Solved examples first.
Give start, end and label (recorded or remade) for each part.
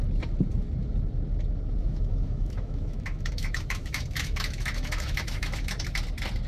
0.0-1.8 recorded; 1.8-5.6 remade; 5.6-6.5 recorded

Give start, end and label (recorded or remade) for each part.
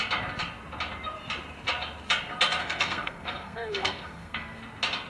0.0-2.6 recorded; 2.6-4.6 remade; 4.6-5.1 recorded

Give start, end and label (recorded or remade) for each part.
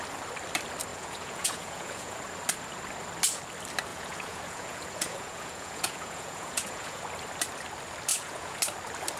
0.0-0.9 recorded; 0.9-2.2 remade; 2.2-3.9 recorded; 3.9-7.0 remade; 7.0-8.1 recorded; 8.1-8.6 remade; 8.6-9.2 recorded